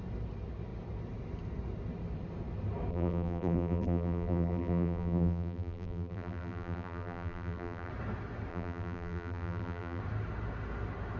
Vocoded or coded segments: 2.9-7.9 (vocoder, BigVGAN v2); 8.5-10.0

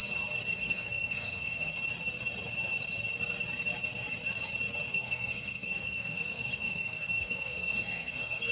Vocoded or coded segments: 0.5-1.7 (codec, SNAC); 4.9-8.5

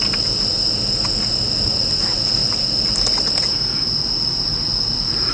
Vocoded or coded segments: none

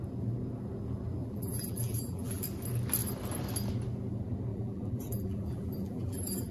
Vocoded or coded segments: 1.2-2.4 (vocoder, BigVGAN v2); 4.5-6.5

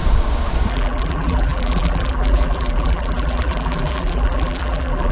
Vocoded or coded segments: 0.7-5.1 (vocoder, BigVGAN v2)

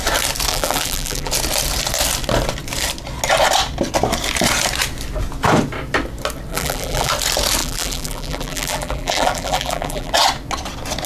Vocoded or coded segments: 0.5-1.3 (vocoder, BigVGAN v2); 6.5-7.1; 7.6-10.1